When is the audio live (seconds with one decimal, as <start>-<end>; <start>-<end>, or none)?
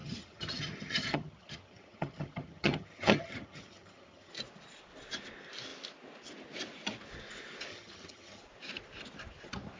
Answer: 4.3-7.7; 8.4-9.8